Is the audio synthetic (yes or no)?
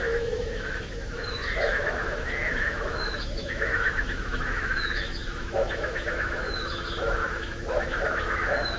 yes